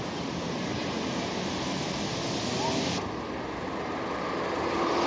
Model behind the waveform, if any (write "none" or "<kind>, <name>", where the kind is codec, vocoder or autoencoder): none